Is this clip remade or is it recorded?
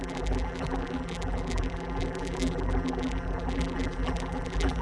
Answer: remade